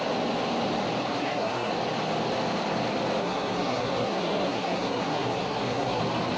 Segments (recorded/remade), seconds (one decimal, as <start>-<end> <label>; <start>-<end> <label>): 0.0-1.1 recorded; 1.1-1.7 remade; 1.7-3.2 recorded; 3.2-6.0 remade; 6.0-6.4 recorded